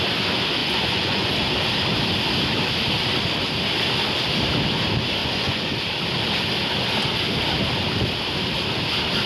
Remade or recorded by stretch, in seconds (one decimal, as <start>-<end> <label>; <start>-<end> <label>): 0.0-0.6 recorded; 0.6-1.3 remade; 1.3-5.2 recorded; 5.2-5.7 remade; 5.7-9.3 recorded